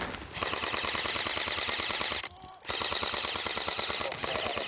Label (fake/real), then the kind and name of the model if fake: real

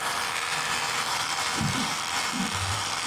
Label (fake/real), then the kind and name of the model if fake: fake, vocoder, BigVGAN v2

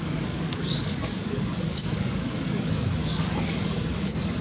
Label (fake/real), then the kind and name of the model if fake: fake, codec, DAC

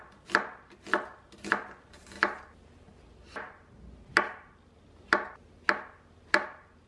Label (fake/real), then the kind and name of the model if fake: real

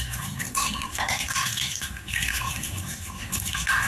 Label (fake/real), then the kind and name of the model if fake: fake, codec, SNAC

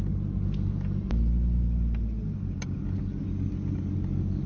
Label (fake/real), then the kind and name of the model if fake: real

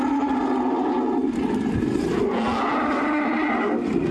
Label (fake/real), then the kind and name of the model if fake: real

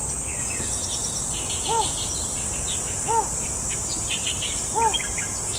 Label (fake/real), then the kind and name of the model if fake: real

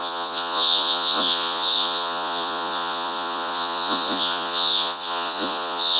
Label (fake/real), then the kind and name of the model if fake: fake, vocoder, Vocos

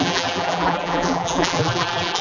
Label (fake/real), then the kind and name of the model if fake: fake, vocoder, BigVGAN v2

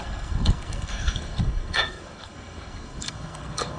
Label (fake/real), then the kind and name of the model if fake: fake, codec, SNAC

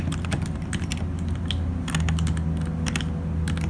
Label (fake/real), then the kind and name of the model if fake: real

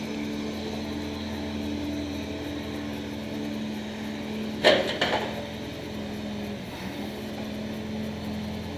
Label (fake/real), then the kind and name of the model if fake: real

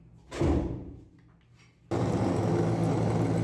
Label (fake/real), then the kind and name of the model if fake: real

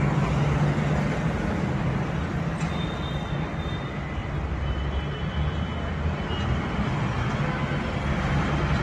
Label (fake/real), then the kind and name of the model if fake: real